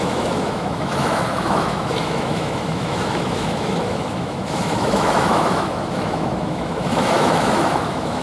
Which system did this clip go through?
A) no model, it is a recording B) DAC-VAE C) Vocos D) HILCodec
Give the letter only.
B